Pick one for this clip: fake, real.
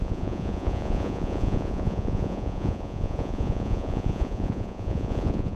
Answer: fake